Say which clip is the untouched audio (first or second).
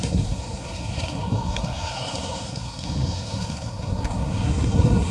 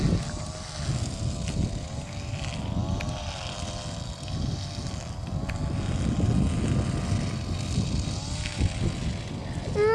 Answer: second